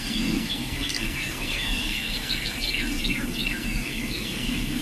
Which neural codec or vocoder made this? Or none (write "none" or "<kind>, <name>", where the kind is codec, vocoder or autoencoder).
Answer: codec, SNAC